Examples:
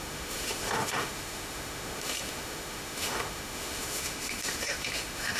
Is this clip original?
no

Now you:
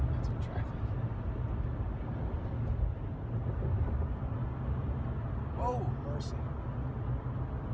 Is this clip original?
yes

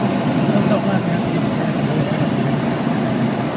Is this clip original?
yes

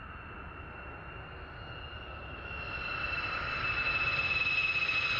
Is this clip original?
yes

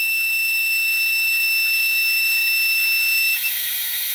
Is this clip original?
no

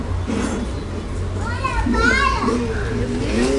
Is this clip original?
yes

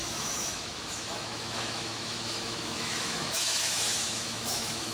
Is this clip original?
no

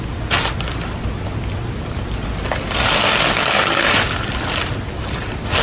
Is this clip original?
yes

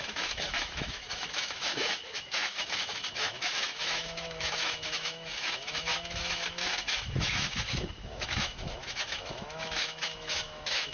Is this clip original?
no